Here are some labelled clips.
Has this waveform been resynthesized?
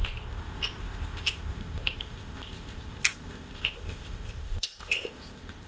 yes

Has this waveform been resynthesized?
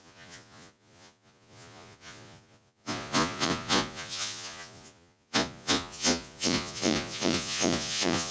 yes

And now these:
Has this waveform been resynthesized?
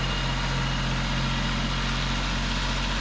no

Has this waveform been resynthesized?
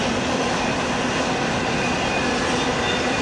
no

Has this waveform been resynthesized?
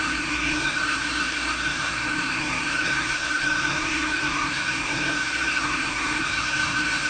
yes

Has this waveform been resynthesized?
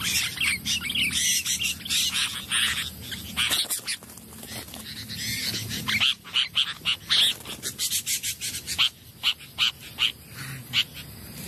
no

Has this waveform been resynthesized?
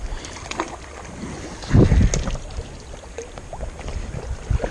no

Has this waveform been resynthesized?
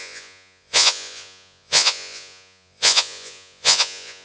yes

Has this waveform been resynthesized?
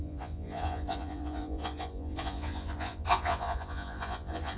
yes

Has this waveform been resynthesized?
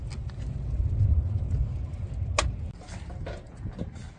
no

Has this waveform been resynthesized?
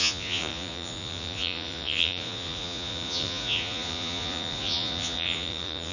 yes